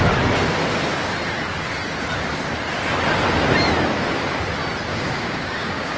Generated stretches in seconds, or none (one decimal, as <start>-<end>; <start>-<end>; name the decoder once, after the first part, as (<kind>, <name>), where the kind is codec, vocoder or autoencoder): 4.9-6.0 (codec, DAC)